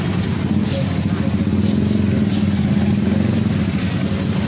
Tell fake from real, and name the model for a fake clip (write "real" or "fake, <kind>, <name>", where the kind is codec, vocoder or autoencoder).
real